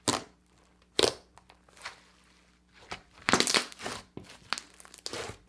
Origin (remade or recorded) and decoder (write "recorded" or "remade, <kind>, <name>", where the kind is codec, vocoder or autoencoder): recorded